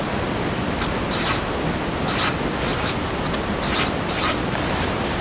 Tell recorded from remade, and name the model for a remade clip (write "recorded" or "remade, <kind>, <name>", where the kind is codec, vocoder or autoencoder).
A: recorded